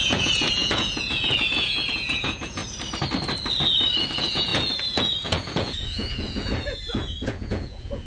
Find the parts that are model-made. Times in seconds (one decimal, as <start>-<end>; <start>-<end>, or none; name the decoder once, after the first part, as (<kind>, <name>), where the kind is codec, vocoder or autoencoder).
0.0-2.6 (vocoder, Vocos); 4.0-8.1